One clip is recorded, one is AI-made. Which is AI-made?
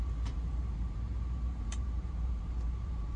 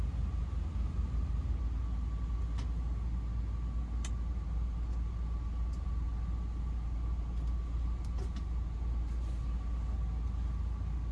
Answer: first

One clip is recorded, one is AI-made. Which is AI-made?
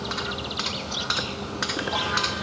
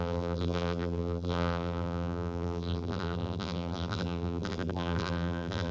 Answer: second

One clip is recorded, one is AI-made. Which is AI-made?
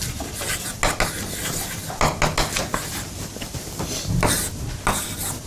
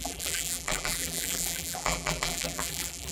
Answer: second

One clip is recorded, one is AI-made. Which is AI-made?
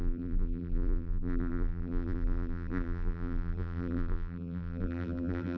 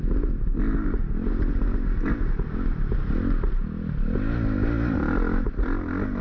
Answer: first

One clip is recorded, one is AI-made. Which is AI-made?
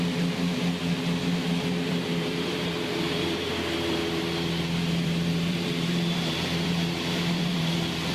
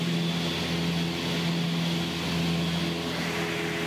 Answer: first